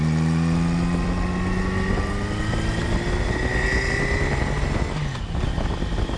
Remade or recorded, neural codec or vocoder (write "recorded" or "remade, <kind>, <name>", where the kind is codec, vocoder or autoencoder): recorded